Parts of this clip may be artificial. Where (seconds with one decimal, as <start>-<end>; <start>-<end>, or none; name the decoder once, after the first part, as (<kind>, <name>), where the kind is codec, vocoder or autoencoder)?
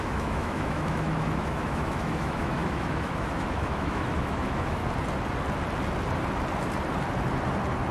0.0-4.8 (autoencoder, DAC-VAE)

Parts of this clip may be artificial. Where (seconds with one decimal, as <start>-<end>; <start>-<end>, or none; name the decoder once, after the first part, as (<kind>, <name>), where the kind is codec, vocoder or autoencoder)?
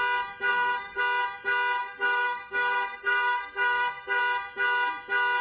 0.5-1.0 (codec, SNAC); 1.8-4.2